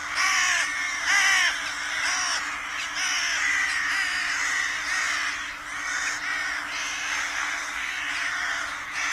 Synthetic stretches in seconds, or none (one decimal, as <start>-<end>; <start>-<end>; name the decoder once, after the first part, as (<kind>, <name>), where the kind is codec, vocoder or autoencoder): 7.3-7.9 (codec, SNAC)

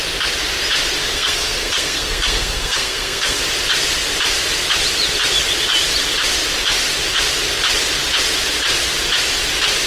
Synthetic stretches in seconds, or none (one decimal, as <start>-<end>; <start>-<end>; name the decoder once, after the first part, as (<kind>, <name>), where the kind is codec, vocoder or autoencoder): 1.0-3.4 (codec, SNAC)

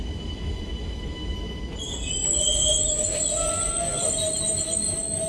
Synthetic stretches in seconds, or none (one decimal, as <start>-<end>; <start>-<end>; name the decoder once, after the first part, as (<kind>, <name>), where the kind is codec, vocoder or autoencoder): none

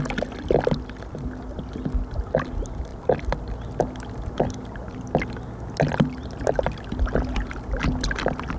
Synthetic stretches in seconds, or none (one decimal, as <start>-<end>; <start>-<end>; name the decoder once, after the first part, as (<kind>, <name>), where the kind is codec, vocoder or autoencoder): none